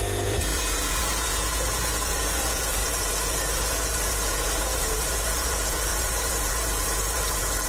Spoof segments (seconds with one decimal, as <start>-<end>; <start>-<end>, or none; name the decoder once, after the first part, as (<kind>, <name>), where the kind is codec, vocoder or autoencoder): 0.0-7.7 (vocoder, Vocos)

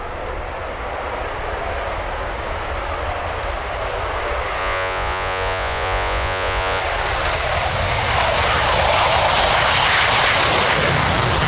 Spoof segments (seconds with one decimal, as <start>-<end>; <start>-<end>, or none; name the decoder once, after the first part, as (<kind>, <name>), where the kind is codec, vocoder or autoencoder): 4.6-6.8 (vocoder, Vocos)

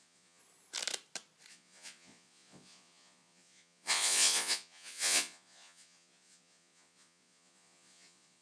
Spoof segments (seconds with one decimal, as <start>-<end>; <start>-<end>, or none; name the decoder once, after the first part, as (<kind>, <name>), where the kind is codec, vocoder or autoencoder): 0.0-0.4 (vocoder, Vocos); 1.5-8.4

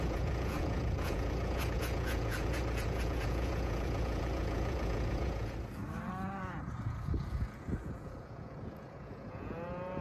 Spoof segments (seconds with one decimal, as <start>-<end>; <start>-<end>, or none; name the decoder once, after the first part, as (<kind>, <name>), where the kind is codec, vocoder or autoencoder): 0.0-5.8 (vocoder, Vocos); 6.4-10.0

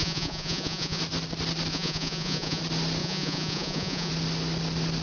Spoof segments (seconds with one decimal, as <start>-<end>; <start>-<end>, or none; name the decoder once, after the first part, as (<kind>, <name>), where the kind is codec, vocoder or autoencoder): 0.0-1.0 (vocoder, Vocos); 1.7-2.6; 3.0-4.1

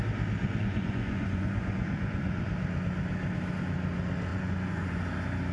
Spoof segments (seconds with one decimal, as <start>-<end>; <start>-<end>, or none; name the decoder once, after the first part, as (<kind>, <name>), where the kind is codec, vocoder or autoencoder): 0.4-2.5 (vocoder, Vocos); 4.3-5.0